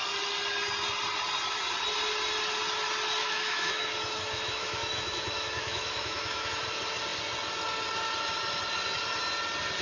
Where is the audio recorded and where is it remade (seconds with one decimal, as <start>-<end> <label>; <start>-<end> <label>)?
0.0-3.2 recorded; 3.2-6.5 remade; 6.5-9.8 recorded